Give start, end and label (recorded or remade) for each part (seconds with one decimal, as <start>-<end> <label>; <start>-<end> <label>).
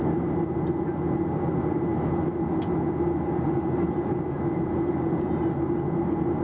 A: 0.0-6.4 recorded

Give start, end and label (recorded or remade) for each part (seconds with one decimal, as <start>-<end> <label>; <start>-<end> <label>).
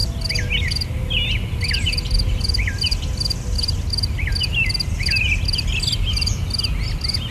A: 0.0-7.3 recorded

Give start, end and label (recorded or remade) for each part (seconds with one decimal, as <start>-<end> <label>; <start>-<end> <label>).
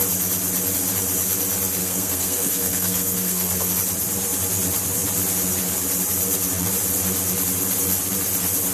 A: 0.0-1.8 recorded; 1.8-3.7 remade; 3.7-8.7 recorded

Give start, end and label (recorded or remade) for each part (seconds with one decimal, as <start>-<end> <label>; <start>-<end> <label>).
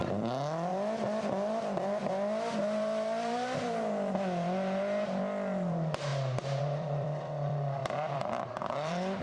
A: 0.0-6.1 remade; 6.1-6.6 recorded; 6.6-9.2 remade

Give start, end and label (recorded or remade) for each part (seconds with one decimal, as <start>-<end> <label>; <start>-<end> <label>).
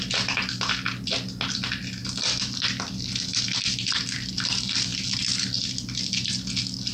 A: 0.0-6.9 recorded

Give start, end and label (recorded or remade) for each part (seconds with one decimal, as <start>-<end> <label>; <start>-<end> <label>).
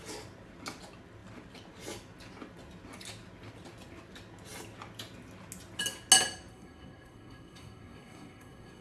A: 0.0-6.5 recorded; 6.5-8.8 remade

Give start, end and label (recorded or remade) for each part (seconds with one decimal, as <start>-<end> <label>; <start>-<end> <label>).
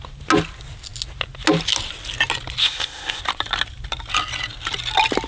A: 0.0-2.6 recorded; 2.6-3.2 remade; 3.2-5.3 recorded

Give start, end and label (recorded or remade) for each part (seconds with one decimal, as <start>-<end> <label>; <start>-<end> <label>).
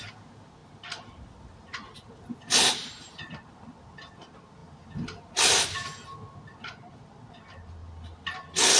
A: 0.0-8.8 recorded